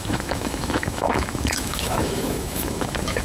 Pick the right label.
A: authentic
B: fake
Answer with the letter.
B